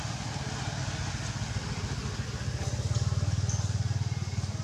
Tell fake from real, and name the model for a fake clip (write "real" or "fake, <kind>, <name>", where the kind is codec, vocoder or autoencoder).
real